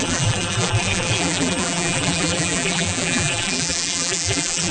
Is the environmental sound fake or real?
fake